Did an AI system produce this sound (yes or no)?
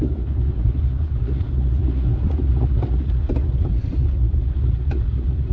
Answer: yes